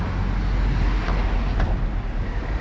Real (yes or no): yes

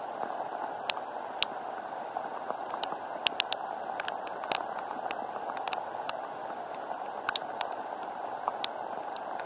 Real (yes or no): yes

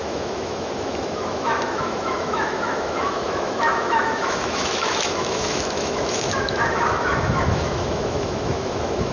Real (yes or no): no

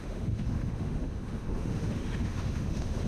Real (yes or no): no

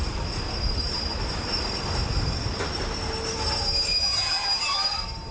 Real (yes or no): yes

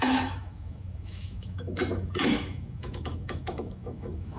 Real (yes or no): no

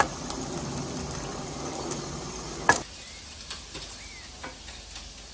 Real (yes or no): yes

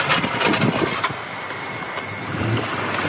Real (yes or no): yes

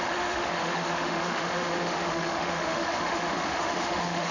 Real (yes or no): no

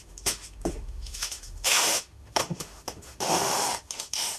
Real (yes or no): no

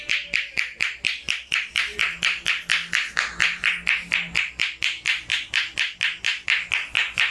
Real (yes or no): yes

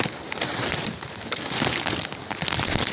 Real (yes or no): yes